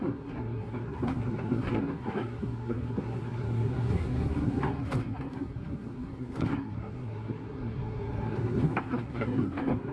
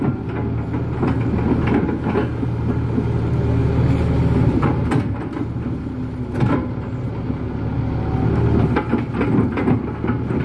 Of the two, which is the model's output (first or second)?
first